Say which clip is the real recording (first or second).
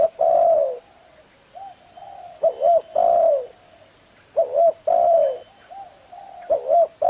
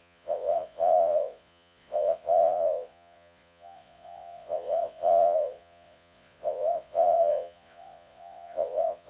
first